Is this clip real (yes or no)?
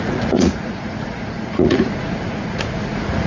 no